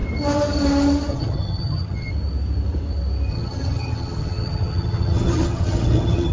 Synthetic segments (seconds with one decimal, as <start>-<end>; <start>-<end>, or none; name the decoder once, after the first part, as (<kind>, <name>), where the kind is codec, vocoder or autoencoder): 1.1-2.1 (vocoder, HiFi-GAN); 3.3-6.3